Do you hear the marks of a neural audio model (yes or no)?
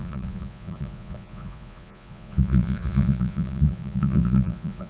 yes